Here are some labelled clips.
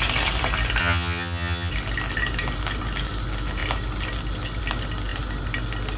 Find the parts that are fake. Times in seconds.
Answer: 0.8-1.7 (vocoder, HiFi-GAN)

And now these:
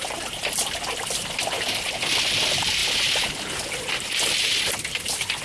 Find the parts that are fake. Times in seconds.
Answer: none

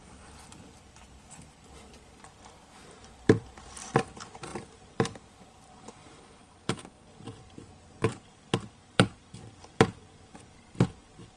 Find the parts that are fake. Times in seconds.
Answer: 0.0-8.3 (vocoder, BigVGAN v2); 8.9-11.4

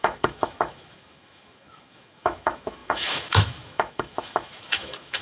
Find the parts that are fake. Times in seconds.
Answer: 0.0-5.2 (autoencoder, DAC-VAE)

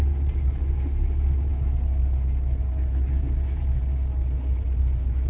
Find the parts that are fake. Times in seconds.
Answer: none

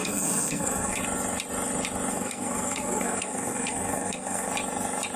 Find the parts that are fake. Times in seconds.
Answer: 0.0-1.0 (codec, SNAC); 2.1-4.5